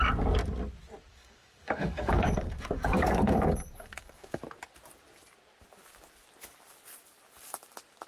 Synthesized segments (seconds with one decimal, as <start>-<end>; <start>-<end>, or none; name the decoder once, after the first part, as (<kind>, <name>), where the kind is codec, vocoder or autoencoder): 1.1-4.4 (codec, DAC)